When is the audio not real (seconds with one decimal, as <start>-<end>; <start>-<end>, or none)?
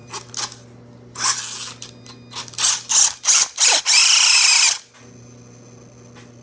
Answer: none